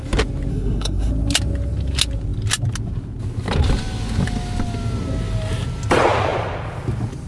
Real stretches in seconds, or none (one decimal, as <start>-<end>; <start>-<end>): 0.0-0.5; 1.1-7.3